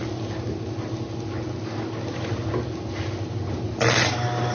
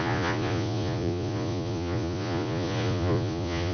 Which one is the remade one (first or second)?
second